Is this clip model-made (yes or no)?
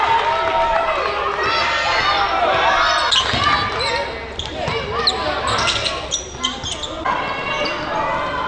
no